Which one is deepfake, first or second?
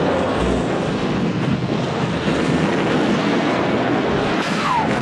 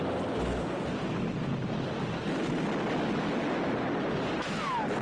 first